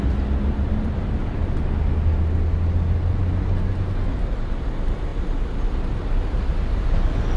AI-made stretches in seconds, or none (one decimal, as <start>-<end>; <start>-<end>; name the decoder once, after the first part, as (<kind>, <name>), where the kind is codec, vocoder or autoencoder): none